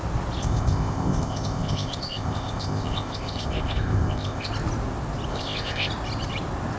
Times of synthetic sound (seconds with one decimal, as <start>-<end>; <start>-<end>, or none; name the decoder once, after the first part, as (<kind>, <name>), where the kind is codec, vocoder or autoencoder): 0.4-4.5 (codec, ZipCodec); 5.3-5.9